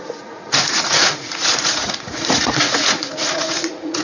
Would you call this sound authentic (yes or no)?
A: no